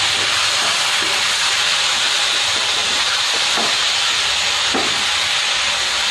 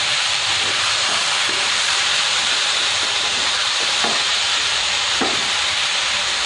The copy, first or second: second